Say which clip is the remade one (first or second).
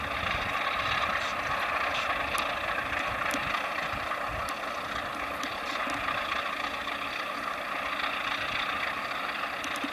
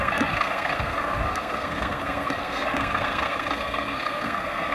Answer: second